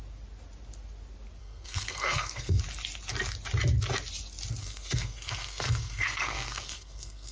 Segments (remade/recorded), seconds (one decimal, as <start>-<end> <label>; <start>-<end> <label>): 0.0-1.4 recorded; 1.4-2.6 remade; 2.6-4.6 recorded; 4.6-7.3 remade